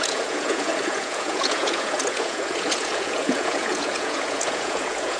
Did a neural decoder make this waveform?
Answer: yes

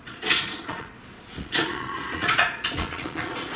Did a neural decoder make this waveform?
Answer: yes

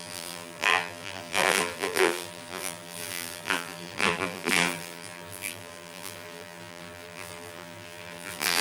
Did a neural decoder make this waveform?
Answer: yes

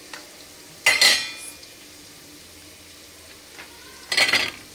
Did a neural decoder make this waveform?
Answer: no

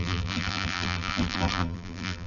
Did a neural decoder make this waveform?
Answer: yes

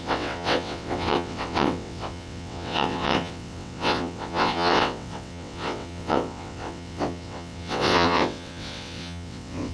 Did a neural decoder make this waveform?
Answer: yes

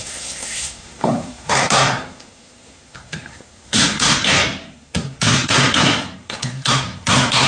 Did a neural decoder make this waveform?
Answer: yes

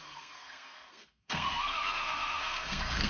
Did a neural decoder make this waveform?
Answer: yes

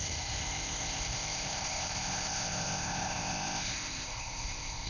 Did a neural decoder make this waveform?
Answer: yes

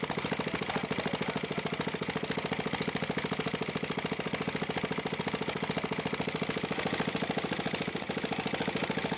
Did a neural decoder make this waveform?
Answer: no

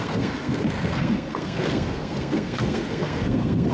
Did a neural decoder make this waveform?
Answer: yes